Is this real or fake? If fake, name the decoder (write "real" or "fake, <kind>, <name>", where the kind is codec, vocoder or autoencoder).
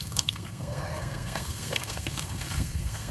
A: fake, codec, SNAC